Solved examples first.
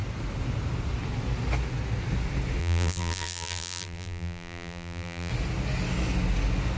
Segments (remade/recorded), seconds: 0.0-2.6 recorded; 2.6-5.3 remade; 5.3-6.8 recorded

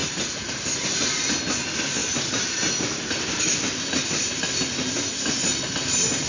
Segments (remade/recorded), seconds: 0.0-1.2 remade; 1.2-2.0 recorded; 2.0-3.0 remade; 3.0-6.3 recorded

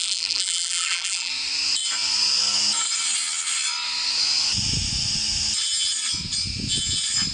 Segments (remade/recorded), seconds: 0.0-1.3 remade; 1.3-7.3 recorded

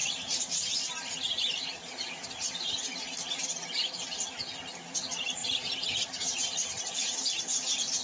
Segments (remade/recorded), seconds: 0.0-3.4 remade; 3.4-5.4 recorded; 5.4-7.4 remade; 7.4-8.0 recorded

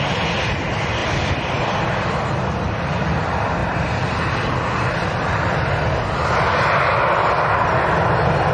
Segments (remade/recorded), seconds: 0.0-1.0 recorded; 1.0-1.7 remade; 1.7-3.6 recorded; 3.6-4.9 remade; 4.9-8.5 recorded

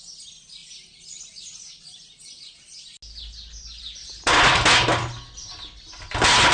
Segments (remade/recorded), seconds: 0.0-6.5 recorded